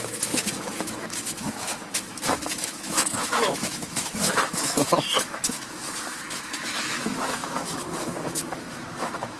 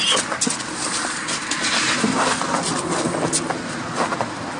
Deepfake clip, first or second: first